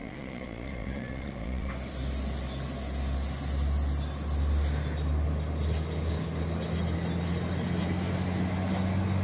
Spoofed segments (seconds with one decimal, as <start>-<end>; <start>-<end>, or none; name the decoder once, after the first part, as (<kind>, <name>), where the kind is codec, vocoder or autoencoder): 0.0-1.7 (vocoder, Vocos)